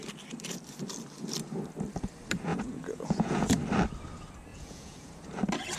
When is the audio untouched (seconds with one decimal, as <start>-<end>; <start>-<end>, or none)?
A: 0.0-2.5; 3.5-4.5; 5.1-5.8